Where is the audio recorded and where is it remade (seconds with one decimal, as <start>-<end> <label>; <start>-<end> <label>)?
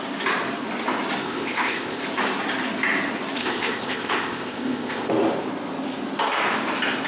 0.0-1.2 recorded; 1.2-2.0 remade; 2.0-3.4 recorded; 3.4-5.1 remade; 5.1-7.1 recorded